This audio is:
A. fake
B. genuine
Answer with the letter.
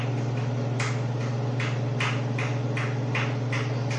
B